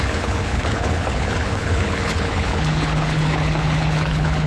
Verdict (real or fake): fake